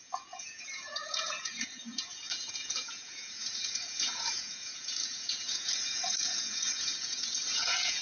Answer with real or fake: fake